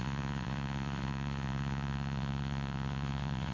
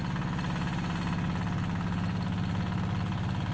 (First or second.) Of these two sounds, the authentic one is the second